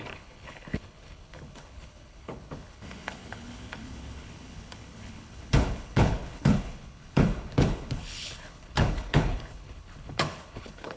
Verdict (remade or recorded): remade